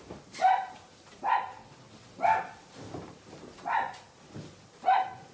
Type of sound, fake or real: real